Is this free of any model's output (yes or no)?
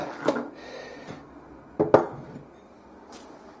yes